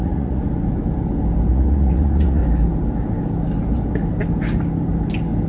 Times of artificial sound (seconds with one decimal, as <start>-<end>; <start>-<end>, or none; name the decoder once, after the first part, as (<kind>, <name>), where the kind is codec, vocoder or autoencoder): 0.0-0.4 (vocoder, Vocos); 1.5-2.4